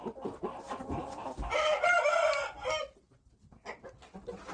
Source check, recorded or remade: recorded